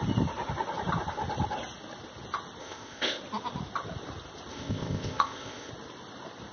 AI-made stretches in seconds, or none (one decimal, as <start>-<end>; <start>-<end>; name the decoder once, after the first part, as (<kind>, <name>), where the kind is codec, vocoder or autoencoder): 2.6-3.2 (codec, ZipCodec); 4.5-5.7